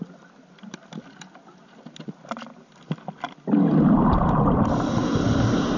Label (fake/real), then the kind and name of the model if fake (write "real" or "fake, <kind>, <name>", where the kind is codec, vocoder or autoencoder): real